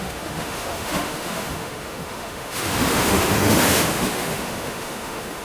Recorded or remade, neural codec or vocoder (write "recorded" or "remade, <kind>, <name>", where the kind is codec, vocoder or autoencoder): remade, autoencoder, DAC-VAE